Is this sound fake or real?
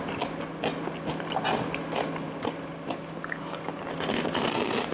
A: real